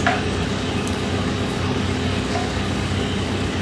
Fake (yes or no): yes